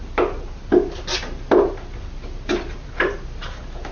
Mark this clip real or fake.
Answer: real